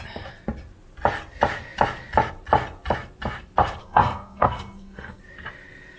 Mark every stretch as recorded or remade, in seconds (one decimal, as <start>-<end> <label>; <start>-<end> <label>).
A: 0.0-3.8 recorded; 3.8-5.2 remade; 5.2-6.0 recorded